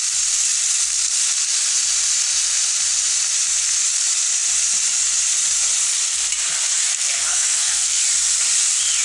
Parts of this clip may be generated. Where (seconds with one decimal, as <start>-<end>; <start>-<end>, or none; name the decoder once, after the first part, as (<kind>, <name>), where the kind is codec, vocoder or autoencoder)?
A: 6.9-8.0 (codec, SNAC)